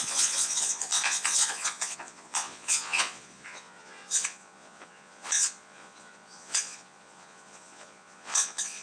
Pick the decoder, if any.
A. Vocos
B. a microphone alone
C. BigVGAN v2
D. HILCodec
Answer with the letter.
A